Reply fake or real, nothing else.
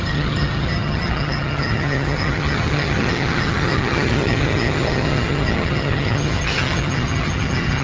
fake